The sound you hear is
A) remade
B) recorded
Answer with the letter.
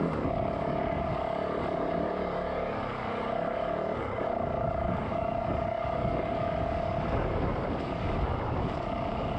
A